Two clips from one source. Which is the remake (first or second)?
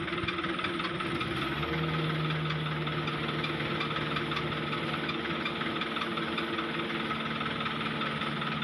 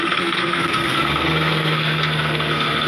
second